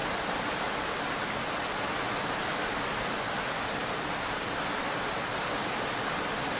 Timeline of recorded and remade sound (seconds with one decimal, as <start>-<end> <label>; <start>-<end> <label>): 0.0-1.1 remade; 1.1-3.8 recorded; 3.8-4.4 remade; 4.4-6.6 recorded